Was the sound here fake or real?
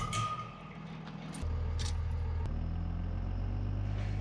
real